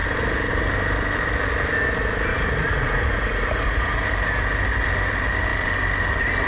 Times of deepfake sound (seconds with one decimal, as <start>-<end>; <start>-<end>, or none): 2.3-4.0